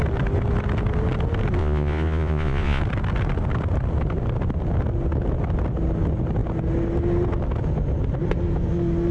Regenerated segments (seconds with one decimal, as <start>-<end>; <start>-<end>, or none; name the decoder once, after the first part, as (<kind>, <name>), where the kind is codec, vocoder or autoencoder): 1.6-2.8 (vocoder, Vocos)